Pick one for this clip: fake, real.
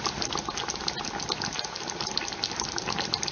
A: real